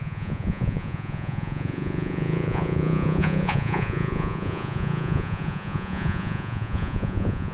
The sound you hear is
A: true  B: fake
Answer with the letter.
B